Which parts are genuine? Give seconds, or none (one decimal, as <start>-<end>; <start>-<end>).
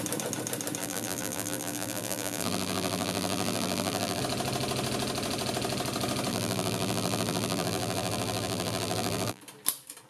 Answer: 0.0-0.8; 4.2-6.3; 9.4-10.1